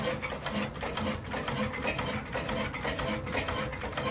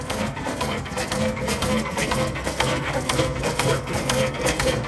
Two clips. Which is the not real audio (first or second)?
second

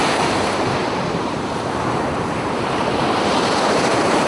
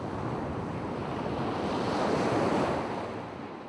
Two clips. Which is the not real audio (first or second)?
first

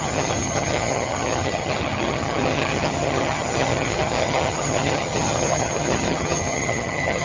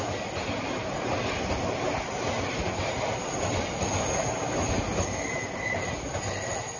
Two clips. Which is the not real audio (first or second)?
first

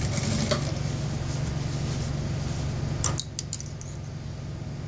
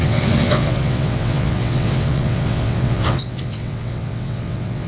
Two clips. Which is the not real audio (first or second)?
second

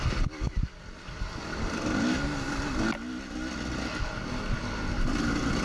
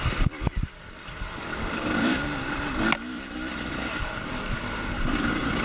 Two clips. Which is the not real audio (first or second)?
second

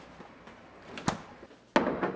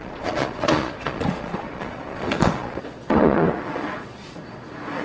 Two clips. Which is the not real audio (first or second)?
second